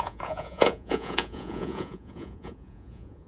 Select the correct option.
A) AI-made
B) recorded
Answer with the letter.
A